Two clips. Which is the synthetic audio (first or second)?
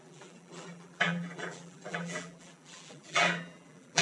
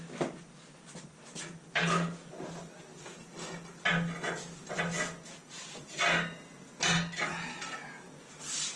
first